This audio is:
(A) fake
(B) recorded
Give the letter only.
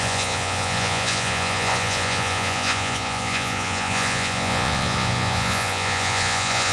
A